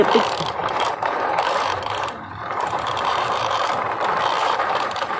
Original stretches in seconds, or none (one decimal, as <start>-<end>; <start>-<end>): 0.0-0.6; 3.7-4.4